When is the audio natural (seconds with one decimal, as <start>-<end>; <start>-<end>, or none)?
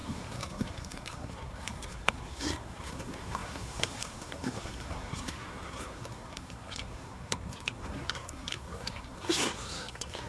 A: none